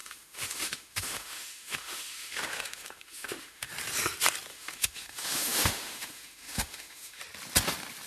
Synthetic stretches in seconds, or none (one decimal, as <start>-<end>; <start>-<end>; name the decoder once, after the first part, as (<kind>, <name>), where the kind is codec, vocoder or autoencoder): 0.0-3.7 (autoencoder, DAC-VAE); 4.5-7.2